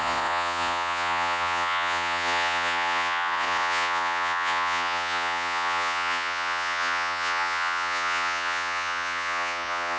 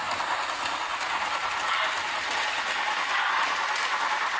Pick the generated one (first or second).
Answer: first